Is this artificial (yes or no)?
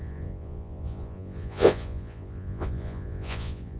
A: yes